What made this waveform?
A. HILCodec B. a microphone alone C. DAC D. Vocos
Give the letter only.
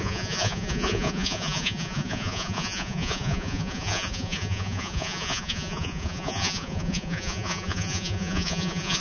D